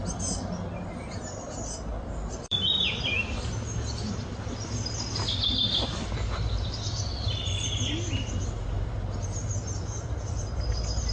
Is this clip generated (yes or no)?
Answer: yes